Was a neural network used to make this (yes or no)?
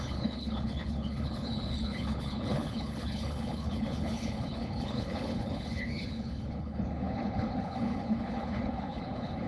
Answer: yes